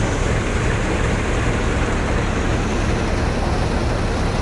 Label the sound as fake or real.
real